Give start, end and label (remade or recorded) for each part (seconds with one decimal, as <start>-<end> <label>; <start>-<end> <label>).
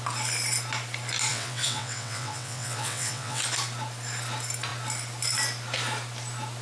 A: 0.0-1.3 recorded; 1.3-3.4 remade; 3.4-6.6 recorded